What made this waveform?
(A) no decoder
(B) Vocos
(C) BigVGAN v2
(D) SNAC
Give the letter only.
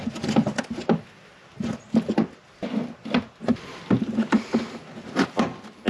A